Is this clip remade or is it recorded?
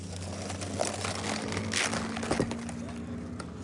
recorded